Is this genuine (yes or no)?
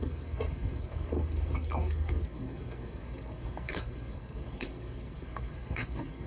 no